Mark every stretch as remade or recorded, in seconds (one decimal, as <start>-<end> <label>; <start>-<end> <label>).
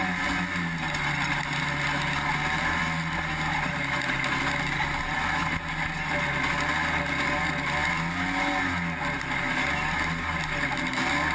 0.0-11.3 recorded